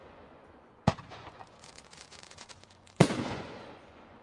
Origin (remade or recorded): remade